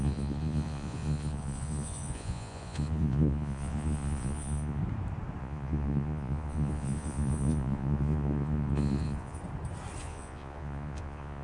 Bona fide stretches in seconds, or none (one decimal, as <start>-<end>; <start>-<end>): 4.8-5.4; 9.4-10.0